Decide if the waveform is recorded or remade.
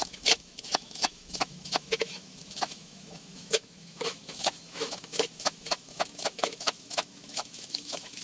remade